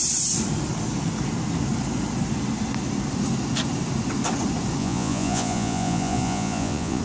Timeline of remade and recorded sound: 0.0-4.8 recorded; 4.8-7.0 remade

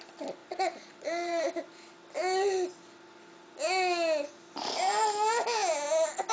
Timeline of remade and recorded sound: 0.0-0.4 recorded; 0.4-1.4 remade; 1.4-6.3 recorded

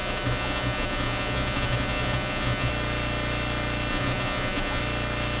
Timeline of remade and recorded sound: 0.0-2.7 remade; 2.7-3.9 recorded; 3.9-4.8 remade; 4.8-5.4 recorded

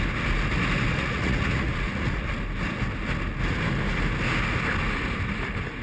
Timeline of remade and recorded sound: 0.0-0.9 recorded; 0.9-2.3 remade; 2.3-5.8 recorded

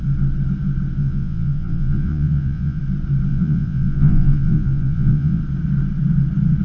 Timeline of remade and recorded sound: 0.0-1.0 recorded; 1.0-2.8 remade; 2.8-3.3 recorded; 3.3-5.4 remade; 5.4-6.6 recorded